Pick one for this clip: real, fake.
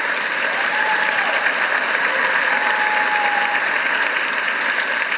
real